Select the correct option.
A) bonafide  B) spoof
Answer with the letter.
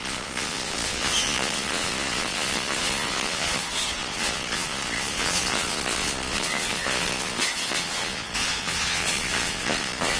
B